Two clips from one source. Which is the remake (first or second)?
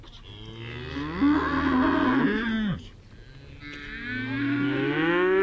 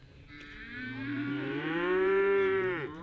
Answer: second